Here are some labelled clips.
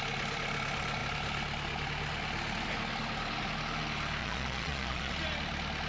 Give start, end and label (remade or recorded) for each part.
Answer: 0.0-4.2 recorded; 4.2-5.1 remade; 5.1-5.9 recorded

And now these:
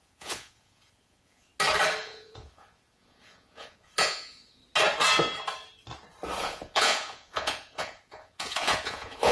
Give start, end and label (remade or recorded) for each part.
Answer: 0.0-1.5 remade; 1.5-2.0 recorded; 2.0-4.6 remade; 4.6-6.4 recorded; 6.4-9.3 remade

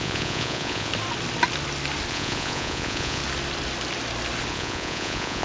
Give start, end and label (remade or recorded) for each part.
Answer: 0.0-0.9 remade; 0.9-2.1 recorded; 2.1-3.2 remade; 3.2-4.5 recorded; 4.5-5.4 remade

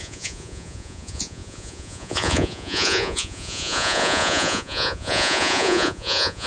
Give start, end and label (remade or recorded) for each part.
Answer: 0.0-6.5 remade

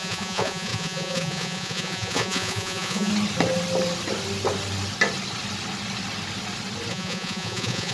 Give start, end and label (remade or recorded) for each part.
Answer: 0.0-3.1 remade; 3.1-6.9 recorded; 6.9-7.9 remade

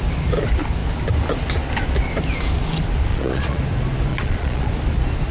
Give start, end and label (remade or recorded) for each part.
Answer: 0.0-3.1 recorded; 3.1-3.6 remade; 3.6-4.1 recorded; 4.1-4.7 remade; 4.7-5.3 recorded